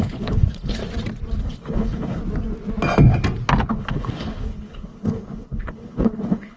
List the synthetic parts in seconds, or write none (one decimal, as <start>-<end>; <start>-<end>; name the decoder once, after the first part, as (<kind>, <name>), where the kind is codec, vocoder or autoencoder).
0.0-0.8 (codec, HILCodec); 1.4-2.2; 3.7-6.6